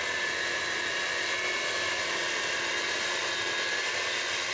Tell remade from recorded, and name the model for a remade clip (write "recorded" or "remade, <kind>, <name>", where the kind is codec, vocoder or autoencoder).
recorded